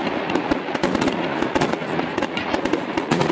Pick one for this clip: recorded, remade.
remade